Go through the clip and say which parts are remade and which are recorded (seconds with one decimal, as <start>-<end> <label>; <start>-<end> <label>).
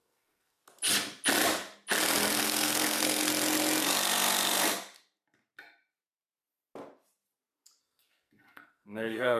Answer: 0.0-0.6 remade; 0.6-2.4 recorded; 2.4-3.3 remade; 3.3-7.8 recorded; 7.8-9.4 remade